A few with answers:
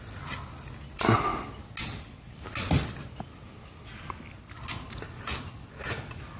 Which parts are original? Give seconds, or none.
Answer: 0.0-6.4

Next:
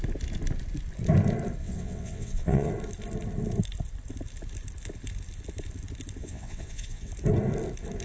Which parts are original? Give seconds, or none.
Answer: 0.0-1.6; 2.7-6.2; 7.1-8.0

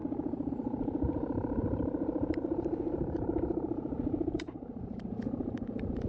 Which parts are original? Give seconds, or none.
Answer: 0.0-0.5

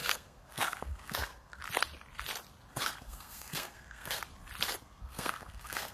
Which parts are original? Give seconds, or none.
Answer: 1.6-2.7; 4.2-4.8

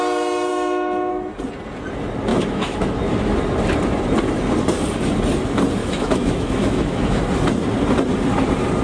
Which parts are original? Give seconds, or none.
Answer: 0.0-0.5; 1.1-2.3; 2.9-5.8; 7.2-8.8

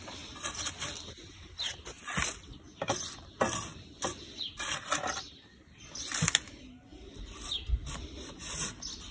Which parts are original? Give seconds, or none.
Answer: 0.0-6.9; 8.6-9.1

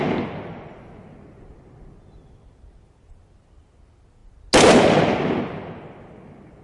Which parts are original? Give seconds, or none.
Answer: 0.0-6.6

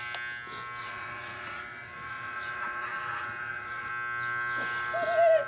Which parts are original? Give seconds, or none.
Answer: 0.0-0.8; 3.9-5.5